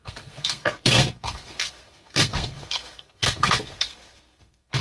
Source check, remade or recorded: remade